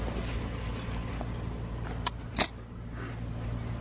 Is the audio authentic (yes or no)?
yes